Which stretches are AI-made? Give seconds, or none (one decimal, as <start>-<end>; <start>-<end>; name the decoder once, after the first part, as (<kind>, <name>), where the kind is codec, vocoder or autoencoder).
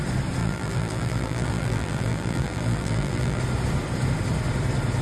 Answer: 0.4-3.4 (vocoder, BigVGAN v2)